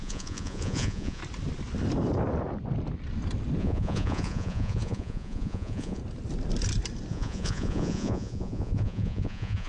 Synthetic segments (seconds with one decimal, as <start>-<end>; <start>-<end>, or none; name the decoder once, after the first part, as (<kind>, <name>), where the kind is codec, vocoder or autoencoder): 0.0-1.2 (vocoder, Vocos); 3.6-6.0; 7.1-9.7

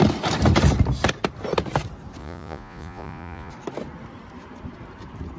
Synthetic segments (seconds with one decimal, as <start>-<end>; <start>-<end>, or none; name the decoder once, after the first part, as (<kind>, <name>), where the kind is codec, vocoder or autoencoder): 2.2-3.5 (vocoder, Vocos)